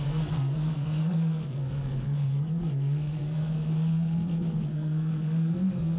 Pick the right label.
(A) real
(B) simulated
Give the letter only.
B